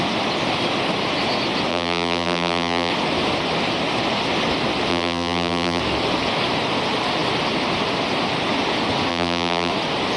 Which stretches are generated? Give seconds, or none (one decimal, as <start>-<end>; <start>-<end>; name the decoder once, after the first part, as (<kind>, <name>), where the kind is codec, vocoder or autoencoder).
1.7-2.9 (vocoder, BigVGAN v2); 4.9-5.8; 9.1-9.7